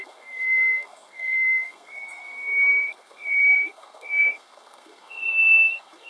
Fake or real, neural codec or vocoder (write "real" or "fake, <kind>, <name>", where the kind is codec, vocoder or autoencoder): fake, codec, SNAC